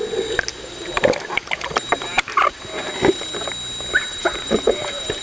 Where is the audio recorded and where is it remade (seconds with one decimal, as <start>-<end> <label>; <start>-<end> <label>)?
0.0-0.5 recorded; 0.5-2.6 remade; 2.6-4.1 recorded; 4.1-5.2 remade

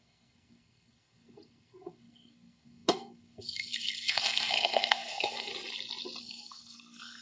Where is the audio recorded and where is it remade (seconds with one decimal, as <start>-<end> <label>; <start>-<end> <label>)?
0.0-5.5 remade; 5.5-6.2 recorded; 6.2-7.2 remade

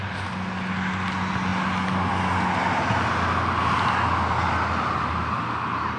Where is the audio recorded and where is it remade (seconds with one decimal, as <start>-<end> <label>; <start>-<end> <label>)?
0.0-6.0 recorded